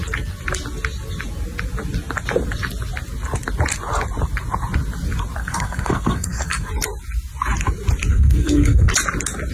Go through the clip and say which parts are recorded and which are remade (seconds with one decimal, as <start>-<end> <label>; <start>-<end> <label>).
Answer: 0.0-5.4 recorded; 5.4-6.7 remade; 6.7-8.1 recorded; 8.1-8.9 remade; 8.9-9.5 recorded